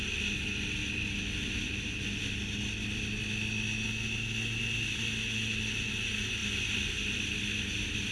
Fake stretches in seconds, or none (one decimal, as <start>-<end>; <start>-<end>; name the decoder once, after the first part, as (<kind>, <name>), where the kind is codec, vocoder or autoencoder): none